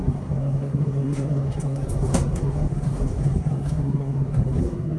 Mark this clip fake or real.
fake